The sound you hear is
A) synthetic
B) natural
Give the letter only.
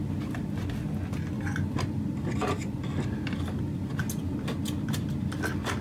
B